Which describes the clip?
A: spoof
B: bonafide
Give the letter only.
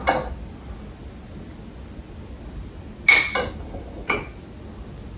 B